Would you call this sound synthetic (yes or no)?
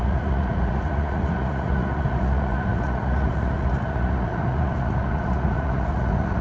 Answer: yes